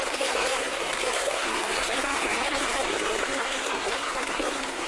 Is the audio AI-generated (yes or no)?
yes